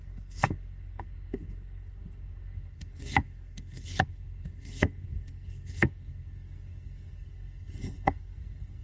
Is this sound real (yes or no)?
no